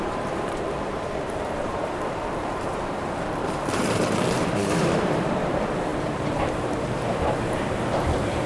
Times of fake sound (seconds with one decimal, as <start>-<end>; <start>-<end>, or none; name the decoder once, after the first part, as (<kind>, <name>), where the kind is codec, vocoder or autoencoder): 0.0-8.5 (vocoder, BigVGAN v2)